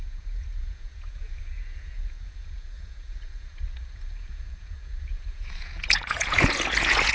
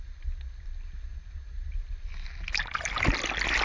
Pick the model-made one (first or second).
first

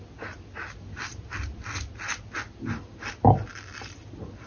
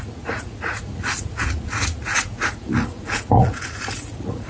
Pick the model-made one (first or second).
second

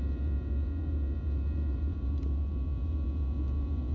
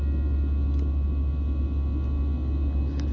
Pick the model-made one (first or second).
first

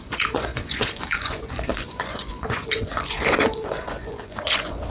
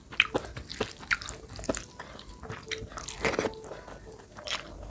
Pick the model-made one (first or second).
first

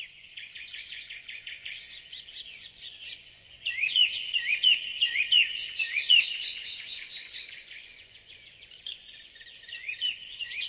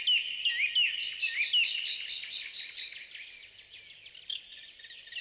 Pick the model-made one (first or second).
first